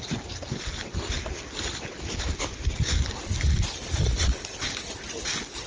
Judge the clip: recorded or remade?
recorded